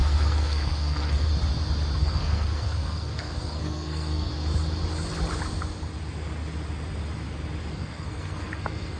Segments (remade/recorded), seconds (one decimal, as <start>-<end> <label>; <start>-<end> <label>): 0.0-1.3 remade; 1.3-2.0 recorded; 2.0-4.3 remade; 4.3-7.7 recorded; 7.7-9.0 remade